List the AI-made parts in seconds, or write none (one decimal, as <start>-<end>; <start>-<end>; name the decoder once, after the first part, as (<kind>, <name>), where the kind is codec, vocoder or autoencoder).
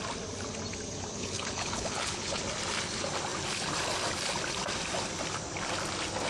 1.1-2.4 (codec, HILCodec)